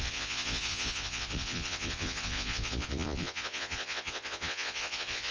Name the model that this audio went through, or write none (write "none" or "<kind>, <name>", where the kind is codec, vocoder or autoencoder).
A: vocoder, Vocos